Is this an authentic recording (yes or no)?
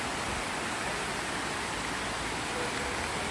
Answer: yes